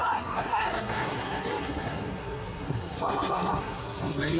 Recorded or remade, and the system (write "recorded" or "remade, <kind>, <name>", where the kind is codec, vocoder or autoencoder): remade, codec, SNAC